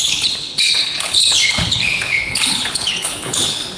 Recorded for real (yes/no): no